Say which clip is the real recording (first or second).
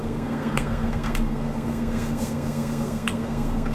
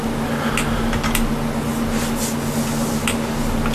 second